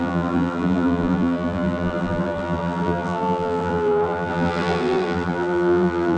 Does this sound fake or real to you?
fake